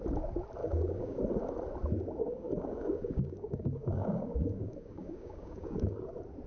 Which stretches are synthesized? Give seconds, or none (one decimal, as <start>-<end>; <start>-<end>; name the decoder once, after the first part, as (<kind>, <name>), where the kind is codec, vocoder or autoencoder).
0.6-1.2 (codec, DAC); 2.2-6.0